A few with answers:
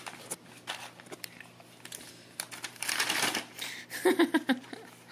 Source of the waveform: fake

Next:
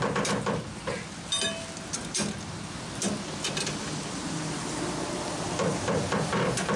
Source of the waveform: real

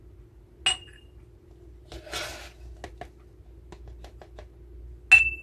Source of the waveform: real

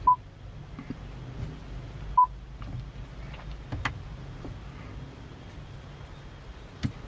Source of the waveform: real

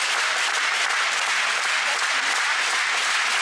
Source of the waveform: real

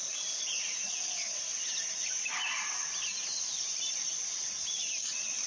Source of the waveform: real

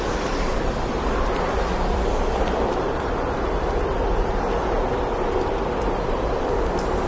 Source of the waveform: fake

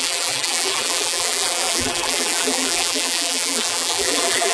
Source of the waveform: fake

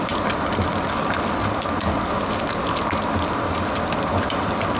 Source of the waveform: real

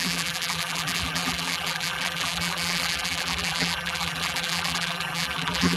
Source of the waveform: fake